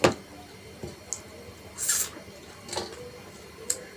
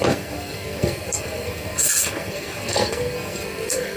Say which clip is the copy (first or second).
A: second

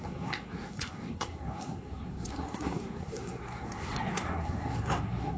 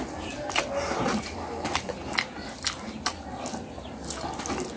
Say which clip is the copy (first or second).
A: first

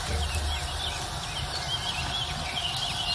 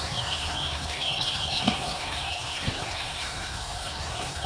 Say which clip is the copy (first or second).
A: second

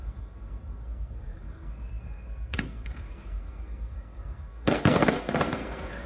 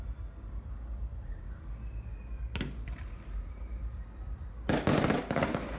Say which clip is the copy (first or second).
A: first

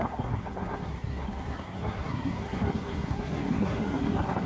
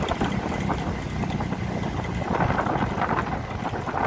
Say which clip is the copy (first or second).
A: first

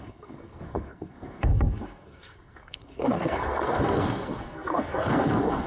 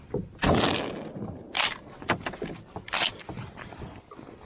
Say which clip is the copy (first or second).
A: first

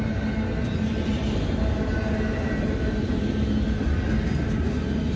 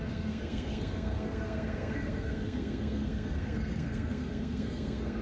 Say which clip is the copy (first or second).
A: second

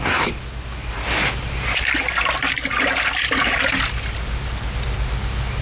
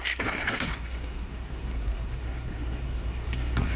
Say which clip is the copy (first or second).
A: second